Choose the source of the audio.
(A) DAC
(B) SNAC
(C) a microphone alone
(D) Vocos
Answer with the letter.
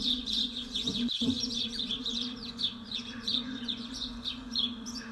D